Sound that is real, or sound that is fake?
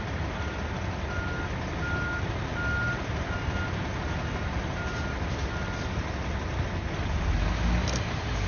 real